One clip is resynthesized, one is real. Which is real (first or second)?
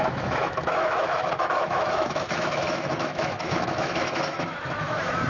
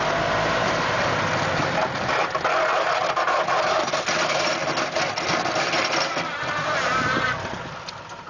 second